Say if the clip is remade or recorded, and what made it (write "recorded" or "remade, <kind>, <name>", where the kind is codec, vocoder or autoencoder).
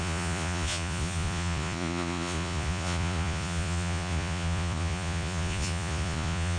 remade, vocoder, Vocos